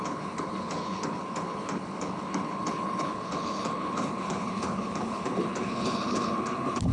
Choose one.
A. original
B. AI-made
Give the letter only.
B